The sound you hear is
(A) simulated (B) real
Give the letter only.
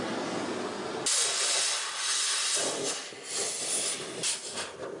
B